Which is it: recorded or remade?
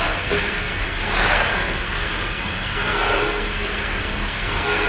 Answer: remade